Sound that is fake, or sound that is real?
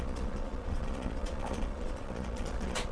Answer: fake